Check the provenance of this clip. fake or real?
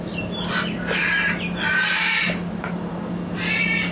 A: real